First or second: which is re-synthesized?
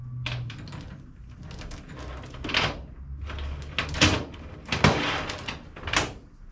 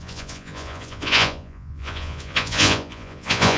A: second